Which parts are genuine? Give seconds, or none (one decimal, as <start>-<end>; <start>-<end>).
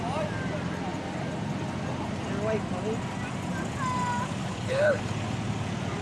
0.0-4.4; 5.0-6.0